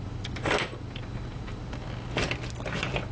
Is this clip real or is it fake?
real